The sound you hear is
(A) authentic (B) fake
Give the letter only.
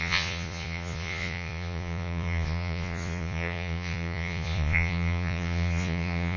B